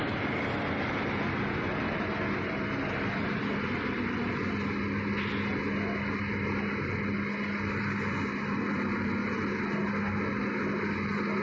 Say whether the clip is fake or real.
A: real